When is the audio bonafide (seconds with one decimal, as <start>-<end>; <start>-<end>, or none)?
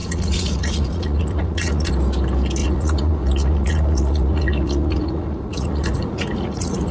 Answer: 1.9-2.6